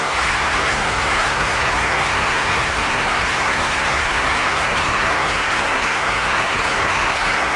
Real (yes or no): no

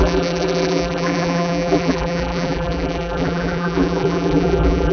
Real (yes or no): no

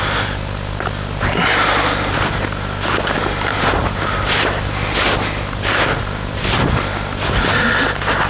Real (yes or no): yes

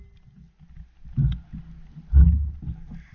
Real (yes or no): yes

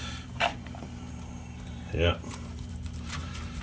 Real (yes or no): no